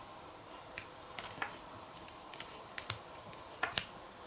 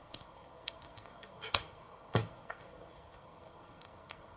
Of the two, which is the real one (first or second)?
first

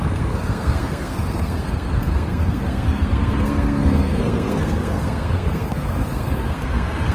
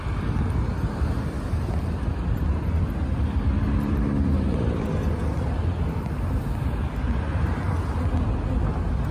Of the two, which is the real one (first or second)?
second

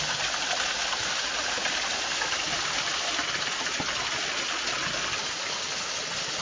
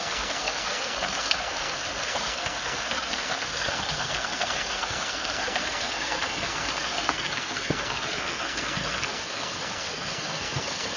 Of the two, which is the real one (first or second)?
first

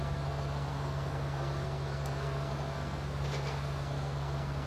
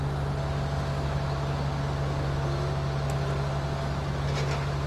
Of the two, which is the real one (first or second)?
second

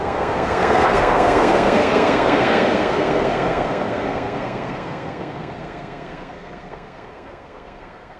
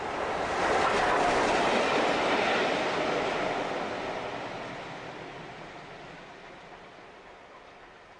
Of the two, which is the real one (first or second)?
second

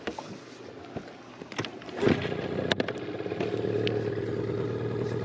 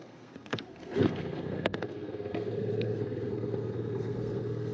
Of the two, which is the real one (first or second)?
first